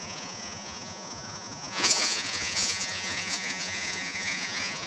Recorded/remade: remade